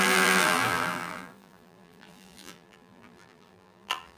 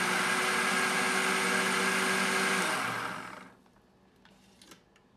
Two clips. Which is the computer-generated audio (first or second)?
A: first